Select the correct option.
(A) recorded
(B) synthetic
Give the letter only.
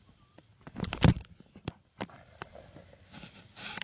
A